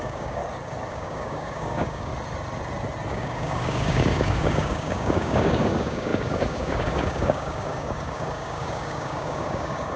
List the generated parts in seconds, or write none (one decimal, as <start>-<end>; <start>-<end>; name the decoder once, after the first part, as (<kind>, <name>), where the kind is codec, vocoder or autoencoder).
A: 0.0-0.4 (codec, DAC); 0.9-2.1; 3.1-10.0